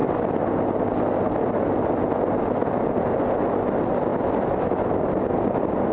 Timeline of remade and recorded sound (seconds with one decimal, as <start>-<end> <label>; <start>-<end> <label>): 0.0-5.9 recorded